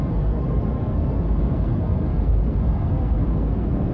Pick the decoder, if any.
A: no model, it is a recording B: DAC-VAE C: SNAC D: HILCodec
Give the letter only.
C